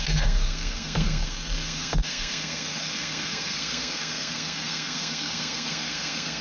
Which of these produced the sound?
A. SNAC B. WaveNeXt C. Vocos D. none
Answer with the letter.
A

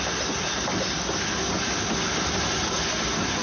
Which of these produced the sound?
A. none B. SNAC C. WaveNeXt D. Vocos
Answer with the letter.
A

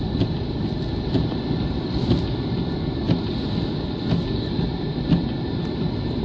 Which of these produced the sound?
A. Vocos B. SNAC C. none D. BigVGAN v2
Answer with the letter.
C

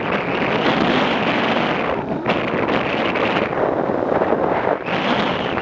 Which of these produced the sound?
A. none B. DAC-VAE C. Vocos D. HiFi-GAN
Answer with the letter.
A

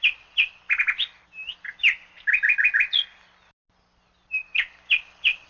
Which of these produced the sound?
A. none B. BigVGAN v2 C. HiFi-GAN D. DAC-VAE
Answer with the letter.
A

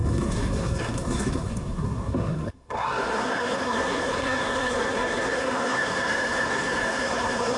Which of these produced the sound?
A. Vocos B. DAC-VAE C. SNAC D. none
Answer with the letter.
C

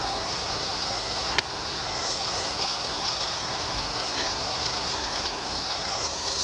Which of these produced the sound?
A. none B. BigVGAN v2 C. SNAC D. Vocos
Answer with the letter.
C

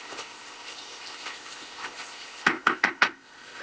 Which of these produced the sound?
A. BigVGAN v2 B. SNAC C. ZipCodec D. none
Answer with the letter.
C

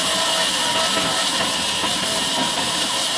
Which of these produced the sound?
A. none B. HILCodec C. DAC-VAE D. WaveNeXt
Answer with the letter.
A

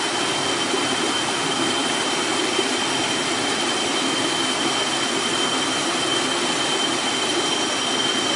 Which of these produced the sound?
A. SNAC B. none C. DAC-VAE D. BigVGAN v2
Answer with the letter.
B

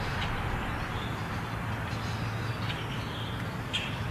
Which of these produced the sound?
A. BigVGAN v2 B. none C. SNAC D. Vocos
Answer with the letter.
B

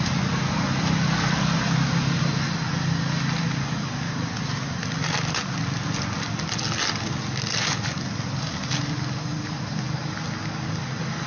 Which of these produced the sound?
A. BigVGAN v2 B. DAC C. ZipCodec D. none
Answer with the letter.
D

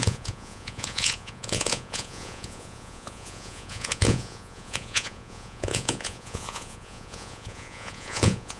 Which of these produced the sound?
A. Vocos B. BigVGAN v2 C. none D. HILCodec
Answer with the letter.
A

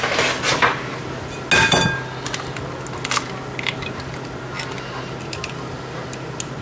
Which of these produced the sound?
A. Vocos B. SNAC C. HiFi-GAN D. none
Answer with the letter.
D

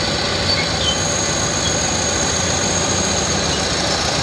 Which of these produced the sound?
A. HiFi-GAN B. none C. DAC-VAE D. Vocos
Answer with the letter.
B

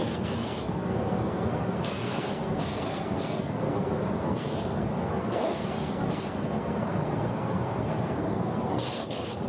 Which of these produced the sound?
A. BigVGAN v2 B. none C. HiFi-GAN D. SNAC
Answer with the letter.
D